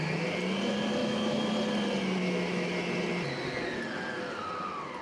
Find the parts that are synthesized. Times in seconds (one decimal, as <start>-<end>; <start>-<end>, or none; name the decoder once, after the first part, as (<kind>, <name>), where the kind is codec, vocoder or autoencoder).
1.0-1.5 (autoencoder, DAC-VAE); 2.2-2.7

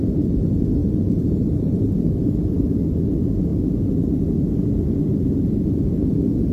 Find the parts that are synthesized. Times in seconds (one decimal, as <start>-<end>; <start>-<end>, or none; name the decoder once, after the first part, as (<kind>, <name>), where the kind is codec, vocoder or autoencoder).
0.8-2.8 (vocoder, BigVGAN v2)

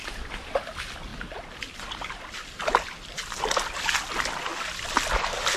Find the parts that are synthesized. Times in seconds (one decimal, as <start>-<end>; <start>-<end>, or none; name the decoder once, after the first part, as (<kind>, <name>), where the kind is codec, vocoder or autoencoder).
0.0-0.6 (vocoder, BigVGAN v2)